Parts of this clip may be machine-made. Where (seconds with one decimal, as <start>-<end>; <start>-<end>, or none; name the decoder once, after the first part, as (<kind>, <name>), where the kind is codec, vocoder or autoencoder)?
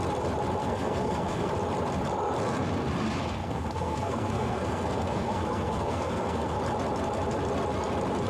0.6-1.5 (codec, SNAC); 3.4-6.6